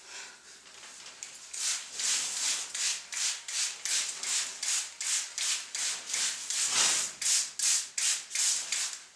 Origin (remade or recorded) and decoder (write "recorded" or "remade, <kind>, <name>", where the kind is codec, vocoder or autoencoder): recorded